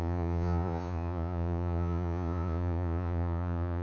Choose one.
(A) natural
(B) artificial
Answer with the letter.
B